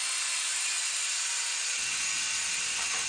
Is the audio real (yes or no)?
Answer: no